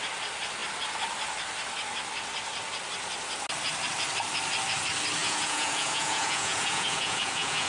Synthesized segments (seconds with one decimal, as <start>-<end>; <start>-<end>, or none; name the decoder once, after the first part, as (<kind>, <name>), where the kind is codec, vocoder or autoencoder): 5.2-7.7 (vocoder, Vocos)